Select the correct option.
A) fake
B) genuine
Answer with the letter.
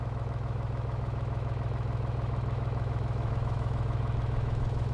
A